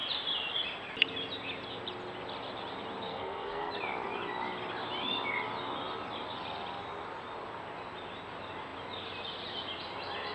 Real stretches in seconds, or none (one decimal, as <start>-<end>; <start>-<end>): 0.0-3.1; 3.7-10.3